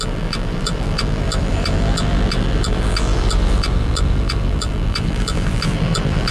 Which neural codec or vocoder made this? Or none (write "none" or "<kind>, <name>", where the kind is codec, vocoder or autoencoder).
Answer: vocoder, BigVGAN v2